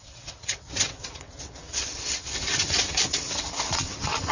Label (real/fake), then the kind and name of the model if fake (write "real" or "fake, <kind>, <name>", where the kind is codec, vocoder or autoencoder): fake, vocoder, WaveNeXt